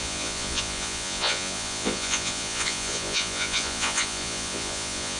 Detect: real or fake fake